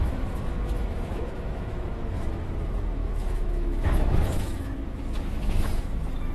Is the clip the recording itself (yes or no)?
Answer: no